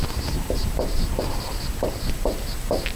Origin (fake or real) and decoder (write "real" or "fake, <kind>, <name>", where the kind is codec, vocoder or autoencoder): real